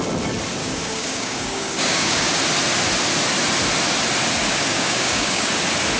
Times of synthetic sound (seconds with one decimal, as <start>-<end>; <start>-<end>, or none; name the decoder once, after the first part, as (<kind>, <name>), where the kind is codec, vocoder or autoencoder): 0.6-2.4 (codec, DAC); 4.5-5.5